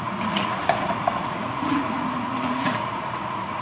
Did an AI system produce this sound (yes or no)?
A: yes